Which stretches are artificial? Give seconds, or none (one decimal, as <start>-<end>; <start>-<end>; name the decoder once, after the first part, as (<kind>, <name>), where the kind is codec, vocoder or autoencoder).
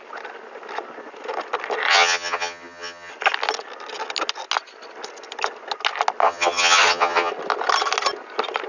1.9-3.1 (vocoder, HiFi-GAN); 6.2-7.3